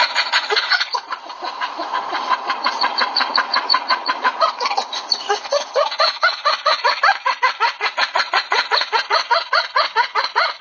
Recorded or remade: remade